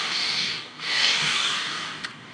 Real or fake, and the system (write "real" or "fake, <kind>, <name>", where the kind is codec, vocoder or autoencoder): fake, codec, DAC